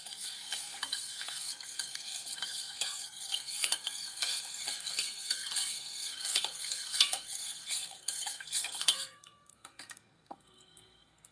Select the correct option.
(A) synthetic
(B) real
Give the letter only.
A